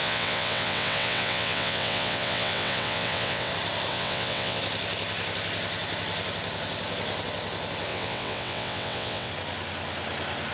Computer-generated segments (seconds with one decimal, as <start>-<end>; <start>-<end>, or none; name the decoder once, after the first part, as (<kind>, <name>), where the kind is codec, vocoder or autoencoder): 0.0-3.5 (vocoder, WaveNeXt); 3.9-4.6; 7.9-9.3